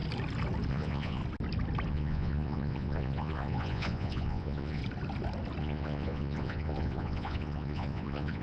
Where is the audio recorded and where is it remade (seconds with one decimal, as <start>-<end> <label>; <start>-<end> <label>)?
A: 0.0-0.7 recorded; 0.7-1.2 remade; 1.2-1.9 recorded; 1.9-4.8 remade; 4.8-5.6 recorded; 5.6-8.4 remade